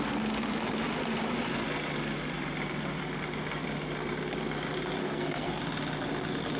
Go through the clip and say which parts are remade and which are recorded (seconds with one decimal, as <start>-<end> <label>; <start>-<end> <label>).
0.0-5.0 recorded; 5.0-5.6 remade; 5.6-6.6 recorded